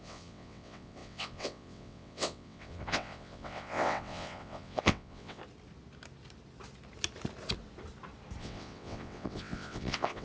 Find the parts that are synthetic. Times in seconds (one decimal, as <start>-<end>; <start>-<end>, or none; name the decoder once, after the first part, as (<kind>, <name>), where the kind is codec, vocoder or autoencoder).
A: 0.0-5.4 (vocoder, WaveNeXt); 8.4-10.2